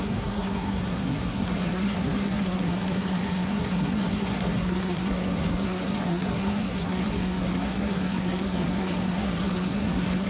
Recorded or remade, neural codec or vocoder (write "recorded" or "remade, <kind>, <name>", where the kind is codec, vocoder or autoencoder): remade, codec, SNAC